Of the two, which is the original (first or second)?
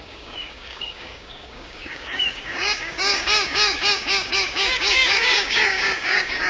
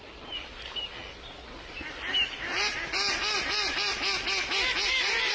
second